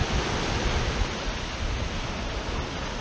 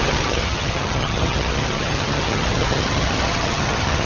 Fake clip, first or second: second